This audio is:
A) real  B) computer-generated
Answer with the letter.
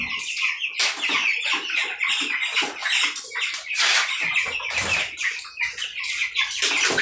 A